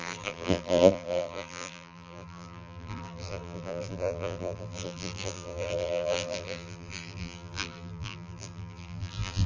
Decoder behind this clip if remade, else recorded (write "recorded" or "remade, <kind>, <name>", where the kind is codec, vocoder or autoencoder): remade, vocoder, BigVGAN v2